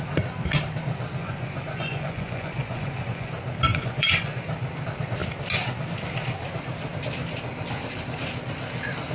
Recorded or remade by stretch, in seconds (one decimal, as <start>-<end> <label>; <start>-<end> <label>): 0.0-1.2 recorded; 1.2-3.3 remade; 3.3-3.7 recorded; 3.7-4.4 remade; 4.4-9.1 recorded